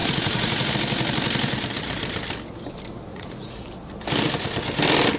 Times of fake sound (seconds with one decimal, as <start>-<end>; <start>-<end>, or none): 0.0-0.7; 3.1-3.6